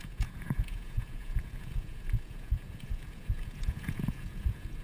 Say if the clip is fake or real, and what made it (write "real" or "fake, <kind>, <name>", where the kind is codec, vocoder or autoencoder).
fake, vocoder, Vocos